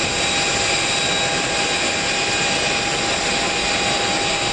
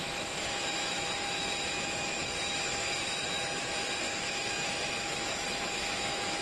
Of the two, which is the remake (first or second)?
second